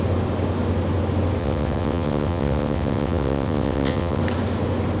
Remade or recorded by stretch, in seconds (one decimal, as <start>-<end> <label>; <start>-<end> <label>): 0.0-1.4 recorded; 1.4-4.2 remade; 4.2-5.0 recorded